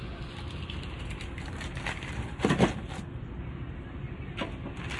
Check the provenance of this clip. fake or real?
real